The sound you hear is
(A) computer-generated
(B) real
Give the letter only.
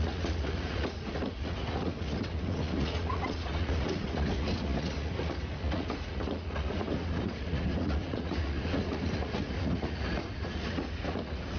A